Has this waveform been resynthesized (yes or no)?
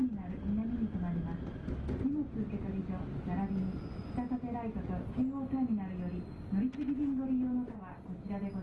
no